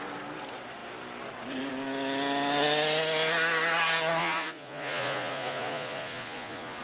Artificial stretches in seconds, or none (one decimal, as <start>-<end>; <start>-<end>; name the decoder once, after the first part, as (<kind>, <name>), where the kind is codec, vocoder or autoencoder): 4.2-6.8 (vocoder, Vocos)